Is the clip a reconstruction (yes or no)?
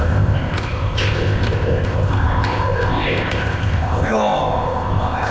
yes